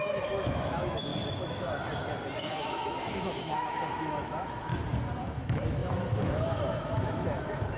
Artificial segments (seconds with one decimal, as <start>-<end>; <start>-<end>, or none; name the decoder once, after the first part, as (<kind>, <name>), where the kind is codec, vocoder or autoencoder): 0.0-1.1 (autoencoder, DAC-VAE); 2.4-4.7; 5.2-7.8